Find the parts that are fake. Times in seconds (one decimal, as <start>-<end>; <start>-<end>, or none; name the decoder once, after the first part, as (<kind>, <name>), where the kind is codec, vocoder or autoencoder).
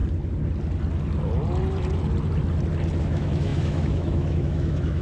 3.0-5.0 (autoencoder, DAC-VAE)